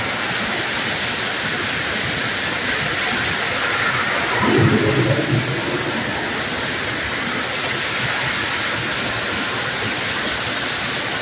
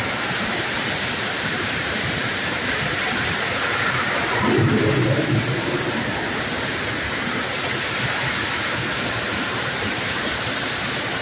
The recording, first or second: first